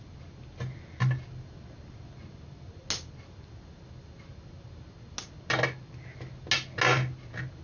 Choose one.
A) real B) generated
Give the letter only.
A